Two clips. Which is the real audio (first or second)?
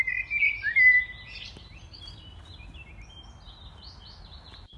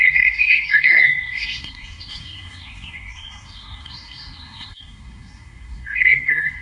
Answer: first